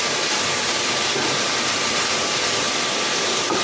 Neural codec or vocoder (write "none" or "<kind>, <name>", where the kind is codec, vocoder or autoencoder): vocoder, BigVGAN v2